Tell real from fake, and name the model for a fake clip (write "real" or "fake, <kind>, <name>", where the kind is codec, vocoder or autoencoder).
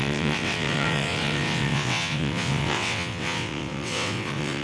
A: fake, vocoder, WaveNeXt